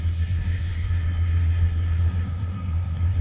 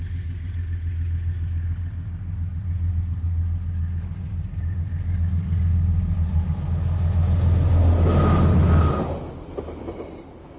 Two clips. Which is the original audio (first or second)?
second